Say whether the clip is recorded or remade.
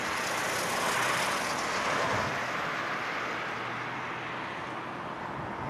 recorded